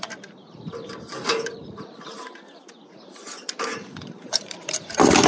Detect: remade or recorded remade